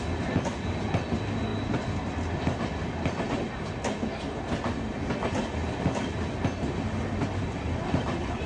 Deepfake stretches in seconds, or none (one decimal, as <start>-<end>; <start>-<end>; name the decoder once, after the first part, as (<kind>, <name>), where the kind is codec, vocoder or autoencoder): none